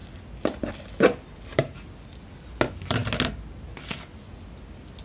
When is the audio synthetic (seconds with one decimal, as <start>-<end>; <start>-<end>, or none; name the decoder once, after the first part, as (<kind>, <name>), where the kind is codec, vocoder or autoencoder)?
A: 0.0-0.7 (vocoder, BigVGAN v2)